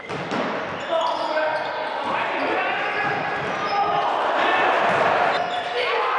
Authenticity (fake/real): real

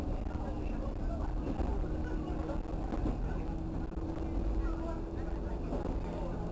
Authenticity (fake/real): real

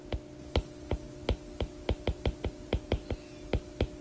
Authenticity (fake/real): real